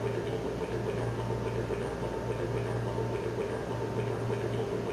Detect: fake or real real